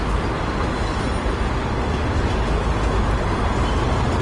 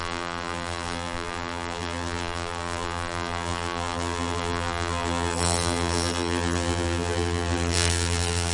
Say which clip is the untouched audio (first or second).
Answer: first